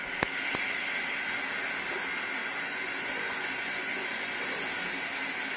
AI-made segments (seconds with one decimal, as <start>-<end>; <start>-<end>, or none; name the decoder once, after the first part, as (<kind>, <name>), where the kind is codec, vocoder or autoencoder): 2.4-4.7 (vocoder, Vocos)